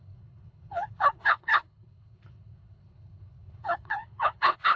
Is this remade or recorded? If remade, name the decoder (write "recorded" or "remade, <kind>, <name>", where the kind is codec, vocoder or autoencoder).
remade, codec, HILCodec